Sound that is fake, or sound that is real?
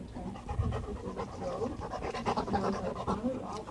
real